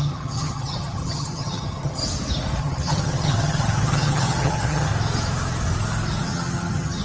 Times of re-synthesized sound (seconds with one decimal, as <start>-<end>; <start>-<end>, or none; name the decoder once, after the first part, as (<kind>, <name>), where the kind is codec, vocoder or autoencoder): 0.0-2.0 (vocoder, HiFi-GAN); 2.6-4.9; 6.2-7.0

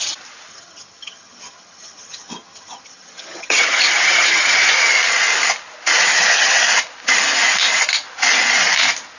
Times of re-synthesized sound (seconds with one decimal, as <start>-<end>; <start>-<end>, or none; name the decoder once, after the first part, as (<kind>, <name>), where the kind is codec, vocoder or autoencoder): 0.5-4.7 (vocoder, HiFi-GAN); 6.1-6.6

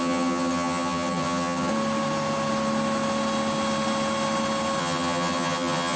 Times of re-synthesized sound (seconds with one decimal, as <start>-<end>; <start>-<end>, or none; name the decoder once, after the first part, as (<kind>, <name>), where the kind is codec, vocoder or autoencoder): 0.0-1.7 (vocoder, HiFi-GAN); 4.8-6.0

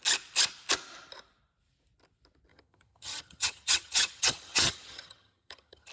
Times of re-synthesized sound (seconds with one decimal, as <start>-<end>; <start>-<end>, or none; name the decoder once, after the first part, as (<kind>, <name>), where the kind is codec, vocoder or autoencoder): 2.5-5.9 (vocoder, HiFi-GAN)

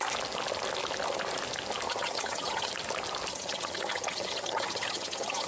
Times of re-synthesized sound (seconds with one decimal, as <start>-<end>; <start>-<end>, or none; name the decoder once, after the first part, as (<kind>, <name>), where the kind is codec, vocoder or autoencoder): 1.9-2.7 (vocoder, HiFi-GAN); 3.3-5.5

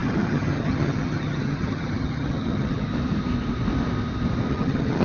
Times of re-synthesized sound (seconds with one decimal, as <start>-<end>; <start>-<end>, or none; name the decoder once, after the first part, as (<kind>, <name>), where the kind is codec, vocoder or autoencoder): 0.0-2.9 (vocoder, HiFi-GAN); 4.5-5.0

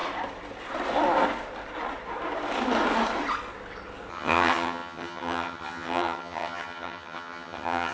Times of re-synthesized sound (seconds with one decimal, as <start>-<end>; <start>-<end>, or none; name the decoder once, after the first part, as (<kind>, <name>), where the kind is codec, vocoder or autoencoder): 4.1-7.9 (vocoder, HiFi-GAN)

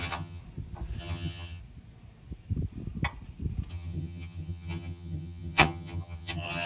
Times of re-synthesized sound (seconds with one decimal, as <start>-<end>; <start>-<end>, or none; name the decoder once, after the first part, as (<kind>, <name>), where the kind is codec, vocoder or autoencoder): 0.0-0.4 (vocoder, HiFi-GAN); 1.0-1.6; 3.7-6.7